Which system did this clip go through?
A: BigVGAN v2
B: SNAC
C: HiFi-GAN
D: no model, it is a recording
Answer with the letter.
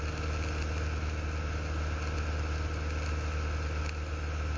D